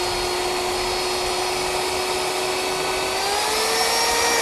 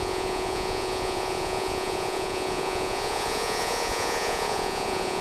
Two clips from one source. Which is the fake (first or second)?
second